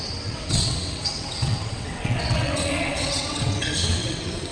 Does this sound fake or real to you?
fake